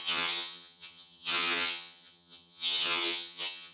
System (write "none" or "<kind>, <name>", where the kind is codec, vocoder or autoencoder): vocoder, HiFi-GAN